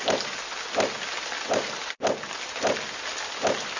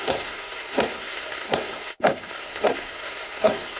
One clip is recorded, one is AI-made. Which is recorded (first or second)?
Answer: first